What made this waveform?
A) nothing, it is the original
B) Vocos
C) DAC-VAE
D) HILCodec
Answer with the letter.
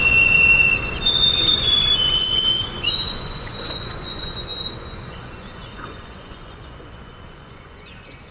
B